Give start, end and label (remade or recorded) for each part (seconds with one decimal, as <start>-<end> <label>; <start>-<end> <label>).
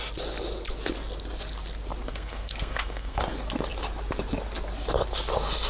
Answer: 0.0-2.1 recorded; 2.1-3.2 remade; 3.2-5.7 recorded